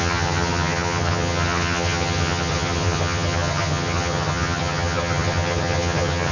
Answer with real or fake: fake